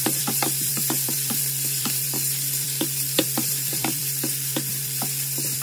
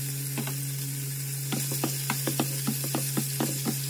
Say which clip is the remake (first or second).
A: first